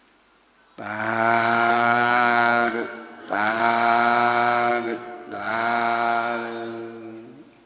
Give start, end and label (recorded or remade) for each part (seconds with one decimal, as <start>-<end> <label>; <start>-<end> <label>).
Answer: 0.0-1.7 recorded; 1.7-3.6 remade; 3.6-4.7 recorded; 4.7-5.5 remade; 5.5-7.7 recorded